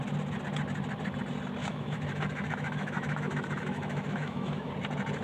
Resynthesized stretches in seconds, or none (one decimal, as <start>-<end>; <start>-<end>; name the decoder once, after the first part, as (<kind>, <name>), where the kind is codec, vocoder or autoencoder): 1.6-4.7 (autoencoder, DAC-VAE)